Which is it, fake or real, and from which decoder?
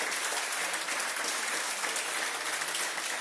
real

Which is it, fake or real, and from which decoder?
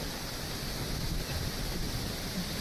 fake, vocoder, BigVGAN v2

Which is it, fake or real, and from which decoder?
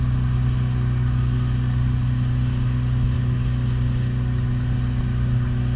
real